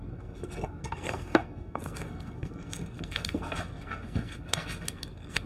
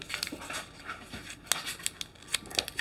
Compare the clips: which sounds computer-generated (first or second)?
first